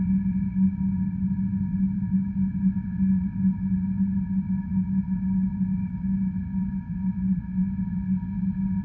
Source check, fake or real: real